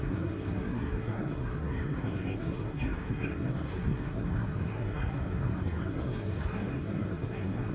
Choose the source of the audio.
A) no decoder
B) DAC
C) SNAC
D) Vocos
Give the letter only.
C